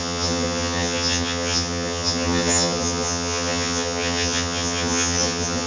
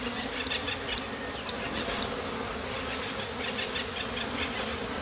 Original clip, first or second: second